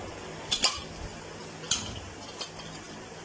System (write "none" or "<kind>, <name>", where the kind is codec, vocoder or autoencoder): none